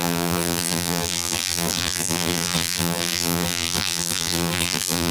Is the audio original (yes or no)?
no